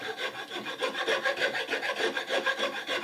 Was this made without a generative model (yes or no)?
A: yes